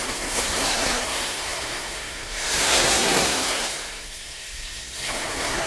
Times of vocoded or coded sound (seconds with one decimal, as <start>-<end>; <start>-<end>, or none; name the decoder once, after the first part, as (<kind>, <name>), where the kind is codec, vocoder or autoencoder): 0.0-5.7 (codec, SNAC)